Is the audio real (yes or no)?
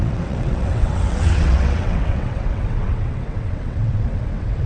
no